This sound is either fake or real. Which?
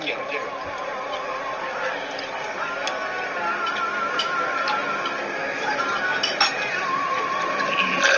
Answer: real